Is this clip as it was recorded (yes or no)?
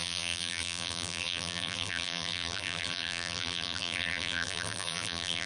no